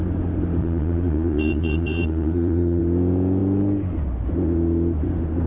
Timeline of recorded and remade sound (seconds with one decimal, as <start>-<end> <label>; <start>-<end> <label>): 0.0-0.6 recorded; 0.6-2.8 remade; 2.8-5.5 recorded

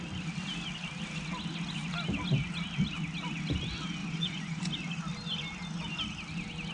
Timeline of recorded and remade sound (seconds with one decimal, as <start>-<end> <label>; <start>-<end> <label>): 0.0-4.0 recorded; 4.0-4.6 remade; 4.6-6.7 recorded